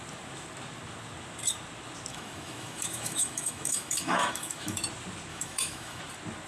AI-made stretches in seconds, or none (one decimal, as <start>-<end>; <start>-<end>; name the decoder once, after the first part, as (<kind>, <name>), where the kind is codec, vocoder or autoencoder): 2.1-4.8 (autoencoder, DAC-VAE); 5.3-6.0